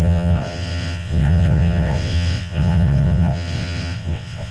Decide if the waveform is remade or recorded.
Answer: remade